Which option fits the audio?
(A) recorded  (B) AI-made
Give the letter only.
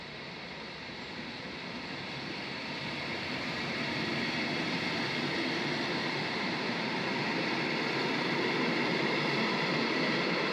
B